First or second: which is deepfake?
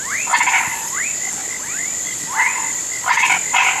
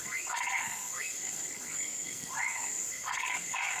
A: second